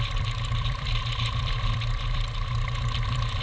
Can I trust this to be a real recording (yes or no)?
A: no